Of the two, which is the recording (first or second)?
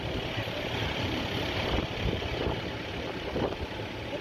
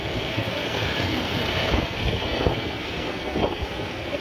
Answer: first